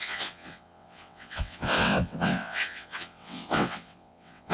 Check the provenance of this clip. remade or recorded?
remade